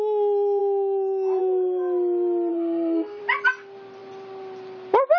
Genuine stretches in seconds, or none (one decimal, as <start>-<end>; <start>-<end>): 0.0-2.5; 3.2-5.2